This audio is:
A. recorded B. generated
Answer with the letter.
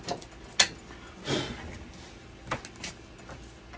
A